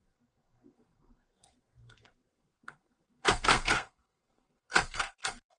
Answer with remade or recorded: remade